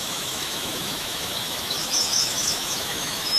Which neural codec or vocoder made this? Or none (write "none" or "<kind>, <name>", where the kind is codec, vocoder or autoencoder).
autoencoder, DAC-VAE